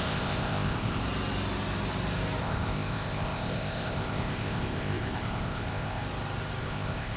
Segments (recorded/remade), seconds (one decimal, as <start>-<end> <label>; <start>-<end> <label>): 0.0-1.0 remade; 1.0-2.4 recorded; 2.4-6.0 remade; 6.0-6.6 recorded; 6.6-7.2 remade